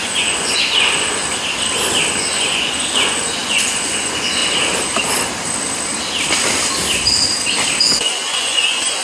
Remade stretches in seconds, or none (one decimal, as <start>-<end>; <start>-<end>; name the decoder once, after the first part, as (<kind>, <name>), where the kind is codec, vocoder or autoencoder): 0.0-1.2 (vocoder, Vocos); 2.1-4.4; 7.8-9.0